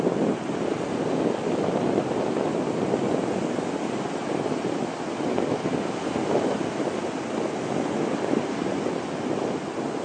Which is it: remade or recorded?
recorded